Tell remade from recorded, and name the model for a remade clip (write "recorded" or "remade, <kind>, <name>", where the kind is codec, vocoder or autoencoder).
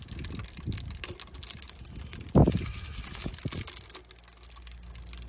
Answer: recorded